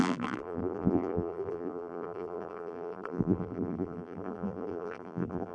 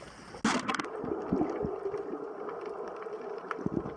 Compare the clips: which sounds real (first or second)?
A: second